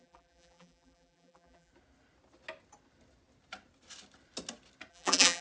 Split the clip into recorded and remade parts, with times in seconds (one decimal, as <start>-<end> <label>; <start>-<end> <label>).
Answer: 0.0-1.7 remade; 1.7-4.9 recorded; 4.9-5.4 remade